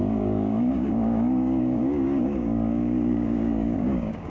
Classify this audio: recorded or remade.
remade